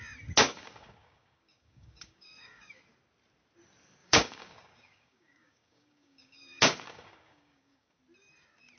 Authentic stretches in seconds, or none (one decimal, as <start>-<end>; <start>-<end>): 0.0-0.4; 2.8-4.0; 8.0-8.8